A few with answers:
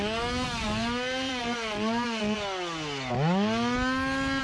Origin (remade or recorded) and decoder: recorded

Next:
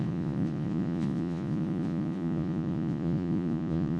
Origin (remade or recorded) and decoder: remade, vocoder, Vocos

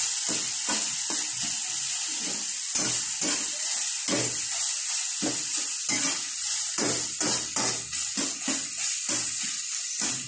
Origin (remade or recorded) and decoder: recorded